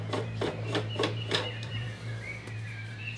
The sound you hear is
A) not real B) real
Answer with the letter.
A